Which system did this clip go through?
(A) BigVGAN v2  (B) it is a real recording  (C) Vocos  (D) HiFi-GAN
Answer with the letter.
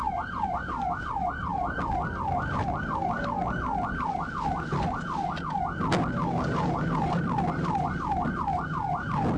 B